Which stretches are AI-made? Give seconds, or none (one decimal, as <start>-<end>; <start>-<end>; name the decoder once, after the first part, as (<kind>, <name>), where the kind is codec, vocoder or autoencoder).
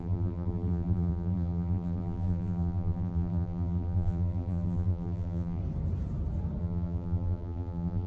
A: 0.0-5.6 (vocoder, BigVGAN v2); 6.6-8.1